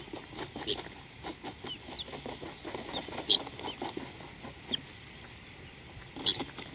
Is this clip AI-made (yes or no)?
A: no